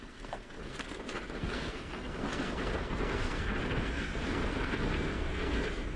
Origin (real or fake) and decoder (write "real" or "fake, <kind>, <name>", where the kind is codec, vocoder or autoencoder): fake, codec, SNAC